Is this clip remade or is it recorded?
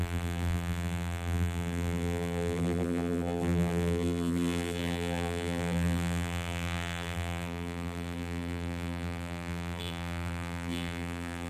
remade